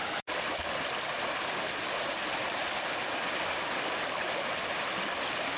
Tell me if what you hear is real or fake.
real